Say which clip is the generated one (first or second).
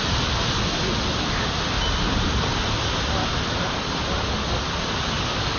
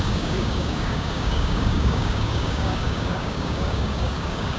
second